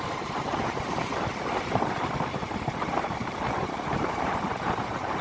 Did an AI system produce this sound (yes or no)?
yes